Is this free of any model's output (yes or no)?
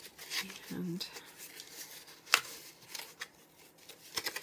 yes